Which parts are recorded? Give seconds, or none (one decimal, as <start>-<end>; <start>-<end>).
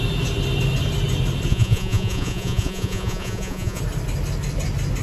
0.0-1.5; 3.8-5.0